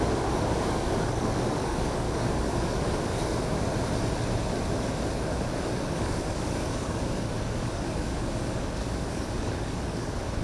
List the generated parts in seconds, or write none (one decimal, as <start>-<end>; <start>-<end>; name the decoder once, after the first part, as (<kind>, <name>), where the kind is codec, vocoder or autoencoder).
0.0-3.7 (codec, DAC); 5.1-10.4